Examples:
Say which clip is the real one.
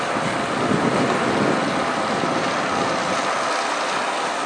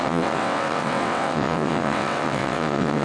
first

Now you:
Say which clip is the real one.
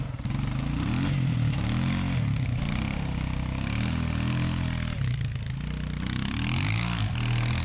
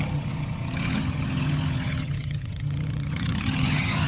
first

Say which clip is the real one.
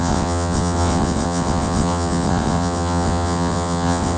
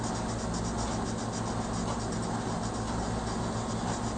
second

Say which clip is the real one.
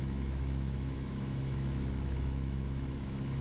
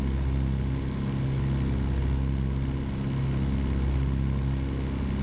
second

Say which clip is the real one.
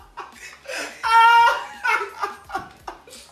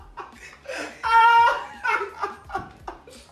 first